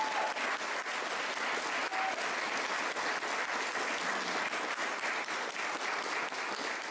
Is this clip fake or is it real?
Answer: real